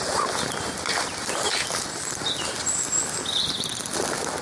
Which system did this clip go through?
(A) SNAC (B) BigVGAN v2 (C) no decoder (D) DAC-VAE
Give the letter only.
C